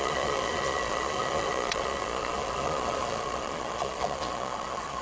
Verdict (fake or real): fake